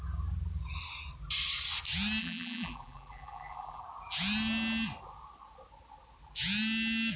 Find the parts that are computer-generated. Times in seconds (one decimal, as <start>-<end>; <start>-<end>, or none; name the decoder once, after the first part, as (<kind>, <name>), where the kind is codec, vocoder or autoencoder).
2.2-3.8 (vocoder, BigVGAN v2)